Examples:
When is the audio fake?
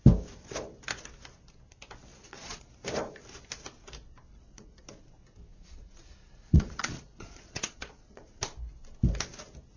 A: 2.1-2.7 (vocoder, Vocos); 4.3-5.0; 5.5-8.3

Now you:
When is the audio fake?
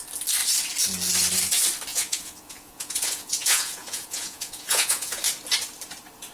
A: 1.9-5.2 (vocoder, Vocos)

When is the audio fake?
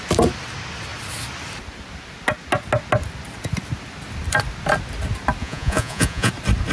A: 5.4-6.3 (vocoder, Vocos)